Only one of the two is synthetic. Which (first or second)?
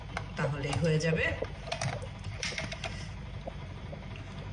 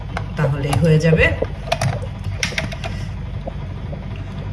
first